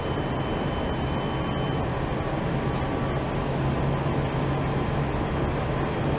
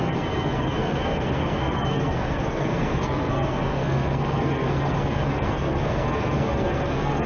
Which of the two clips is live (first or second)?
first